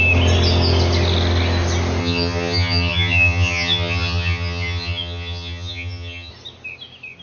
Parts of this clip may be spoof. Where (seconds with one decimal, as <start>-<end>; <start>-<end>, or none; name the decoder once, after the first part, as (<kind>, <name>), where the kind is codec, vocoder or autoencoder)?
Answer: 2.0-6.3 (vocoder, HiFi-GAN)